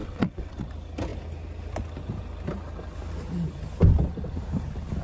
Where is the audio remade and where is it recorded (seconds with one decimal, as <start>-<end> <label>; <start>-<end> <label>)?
0.0-0.7 remade; 0.7-5.0 recorded